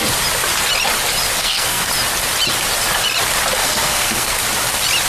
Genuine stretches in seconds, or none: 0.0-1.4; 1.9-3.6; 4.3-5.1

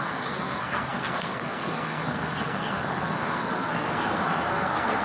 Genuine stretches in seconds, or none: none